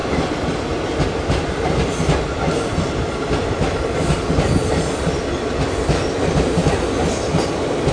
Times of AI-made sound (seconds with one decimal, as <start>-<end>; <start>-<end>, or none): none

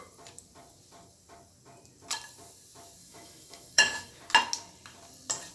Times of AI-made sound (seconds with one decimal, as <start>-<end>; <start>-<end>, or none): 3.0-4.1

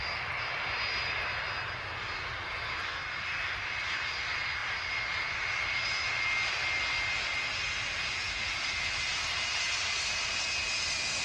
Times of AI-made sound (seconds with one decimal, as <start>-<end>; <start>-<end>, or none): none

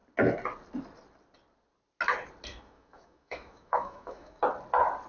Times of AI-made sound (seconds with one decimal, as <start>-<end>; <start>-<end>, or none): 2.5-4.4

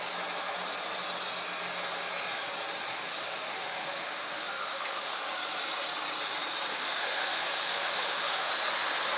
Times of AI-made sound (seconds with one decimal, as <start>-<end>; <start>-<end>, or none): 3.0-5.2; 6.7-8.5

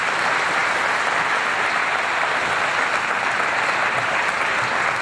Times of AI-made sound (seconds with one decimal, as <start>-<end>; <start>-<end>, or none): none

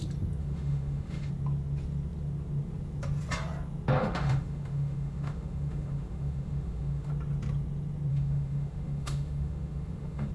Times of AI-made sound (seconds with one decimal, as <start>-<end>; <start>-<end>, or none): 0.4-1.3; 4.0-7.1; 8.1-10.3